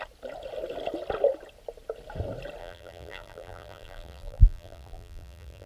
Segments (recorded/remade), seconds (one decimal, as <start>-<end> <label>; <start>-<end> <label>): 0.0-2.6 recorded; 2.6-5.7 remade